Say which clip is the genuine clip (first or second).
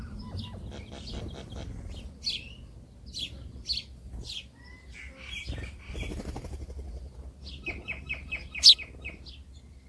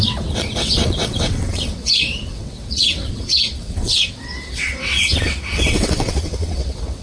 first